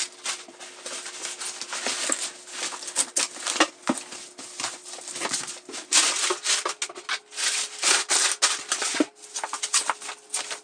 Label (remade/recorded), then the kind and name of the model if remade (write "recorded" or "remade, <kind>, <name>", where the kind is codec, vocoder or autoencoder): recorded